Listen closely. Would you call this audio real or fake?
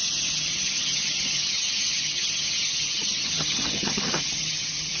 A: fake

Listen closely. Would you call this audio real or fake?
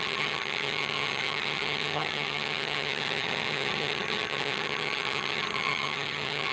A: fake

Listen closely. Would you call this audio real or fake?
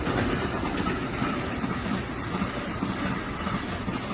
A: real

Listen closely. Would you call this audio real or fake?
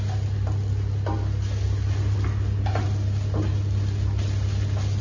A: real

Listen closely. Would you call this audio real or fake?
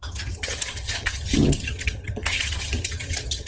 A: fake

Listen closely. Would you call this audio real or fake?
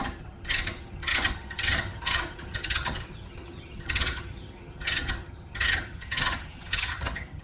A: fake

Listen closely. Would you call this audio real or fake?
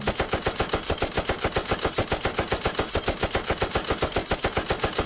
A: real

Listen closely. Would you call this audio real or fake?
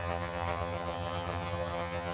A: fake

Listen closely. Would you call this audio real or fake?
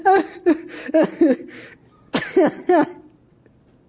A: real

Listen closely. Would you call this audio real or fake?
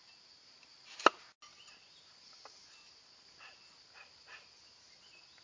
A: real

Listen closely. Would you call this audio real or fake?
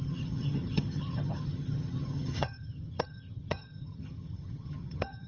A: fake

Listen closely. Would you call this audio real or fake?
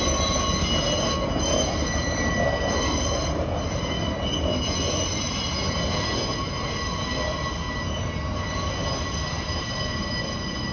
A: real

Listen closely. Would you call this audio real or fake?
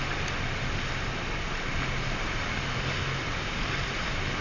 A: real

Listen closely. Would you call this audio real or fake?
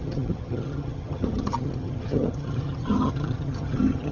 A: fake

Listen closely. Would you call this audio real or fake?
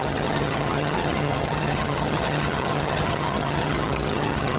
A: fake